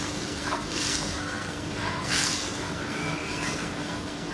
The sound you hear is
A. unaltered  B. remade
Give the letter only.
B